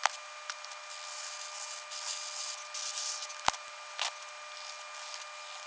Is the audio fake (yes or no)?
no